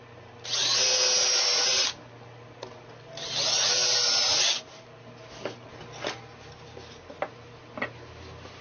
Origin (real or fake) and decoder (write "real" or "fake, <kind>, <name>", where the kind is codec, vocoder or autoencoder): real